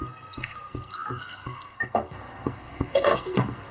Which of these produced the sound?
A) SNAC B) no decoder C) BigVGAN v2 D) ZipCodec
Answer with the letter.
A